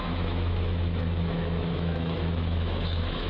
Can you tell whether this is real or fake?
fake